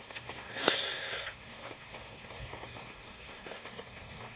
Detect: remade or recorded remade